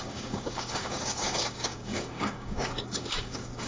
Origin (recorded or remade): remade